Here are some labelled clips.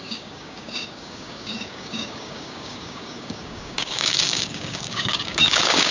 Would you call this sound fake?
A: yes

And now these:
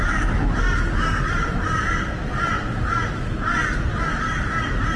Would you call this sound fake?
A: no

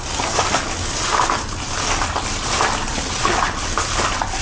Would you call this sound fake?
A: no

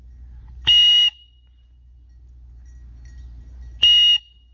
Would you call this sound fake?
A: no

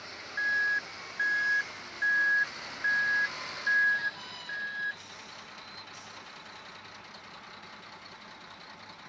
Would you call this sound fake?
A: no